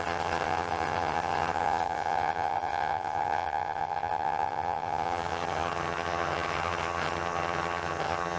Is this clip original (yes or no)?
no